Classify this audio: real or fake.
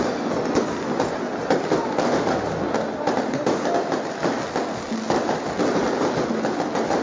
real